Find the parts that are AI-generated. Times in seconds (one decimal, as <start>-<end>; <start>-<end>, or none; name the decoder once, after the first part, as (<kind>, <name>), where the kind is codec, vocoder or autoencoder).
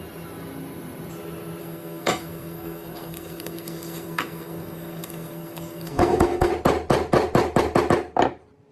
1.6-6.5 (codec, SNAC)